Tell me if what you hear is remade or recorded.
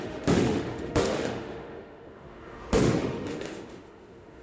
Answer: remade